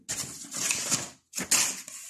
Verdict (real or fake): real